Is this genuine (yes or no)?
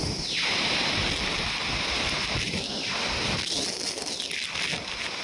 yes